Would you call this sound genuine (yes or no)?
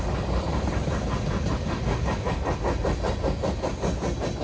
yes